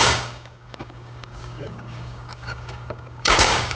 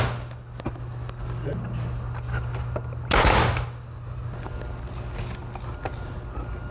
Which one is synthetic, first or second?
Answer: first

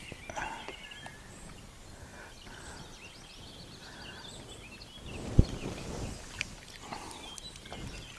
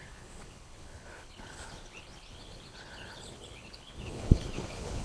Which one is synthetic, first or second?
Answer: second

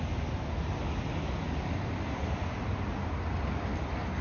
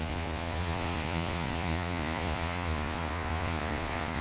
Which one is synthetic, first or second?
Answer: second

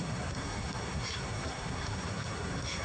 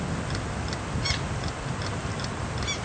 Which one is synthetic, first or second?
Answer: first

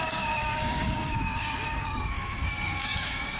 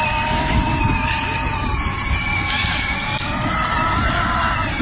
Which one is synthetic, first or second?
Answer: first